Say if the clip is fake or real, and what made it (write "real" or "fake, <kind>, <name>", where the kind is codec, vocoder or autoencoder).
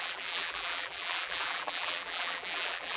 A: fake, vocoder, BigVGAN v2